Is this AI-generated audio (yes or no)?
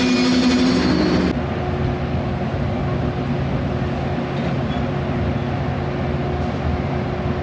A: no